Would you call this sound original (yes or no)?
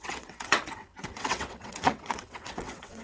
no